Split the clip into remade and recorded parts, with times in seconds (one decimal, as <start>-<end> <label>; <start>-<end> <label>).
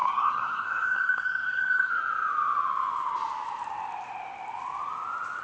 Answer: 0.0-1.9 remade; 1.9-5.4 recorded